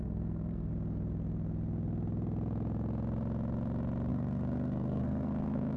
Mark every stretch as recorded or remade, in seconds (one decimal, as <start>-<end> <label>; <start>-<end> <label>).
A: 0.0-0.7 remade; 0.7-4.1 recorded; 4.1-5.8 remade